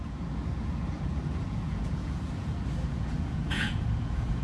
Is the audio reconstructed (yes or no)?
yes